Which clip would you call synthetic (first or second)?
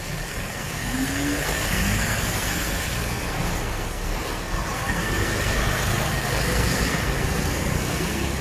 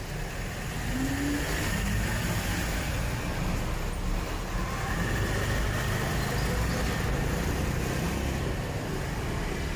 first